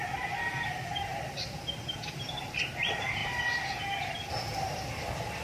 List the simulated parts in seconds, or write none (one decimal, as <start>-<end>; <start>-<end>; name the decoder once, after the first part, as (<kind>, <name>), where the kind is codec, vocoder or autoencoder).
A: none